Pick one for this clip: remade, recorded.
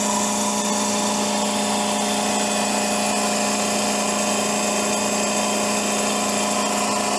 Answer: recorded